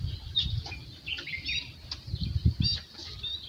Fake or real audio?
real